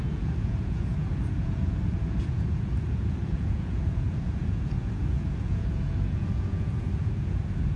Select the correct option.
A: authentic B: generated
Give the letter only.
B